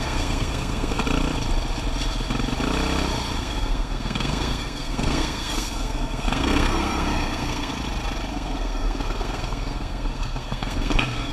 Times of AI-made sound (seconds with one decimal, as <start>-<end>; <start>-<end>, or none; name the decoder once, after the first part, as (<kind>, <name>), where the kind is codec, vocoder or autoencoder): 0.0-1.0 (codec, SNAC); 3.4-7.7; 8.3-11.3